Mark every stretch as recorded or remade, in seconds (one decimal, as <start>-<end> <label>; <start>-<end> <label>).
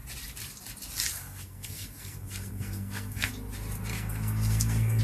0.0-1.1 recorded; 1.1-3.3 remade; 3.3-3.9 recorded; 3.9-5.0 remade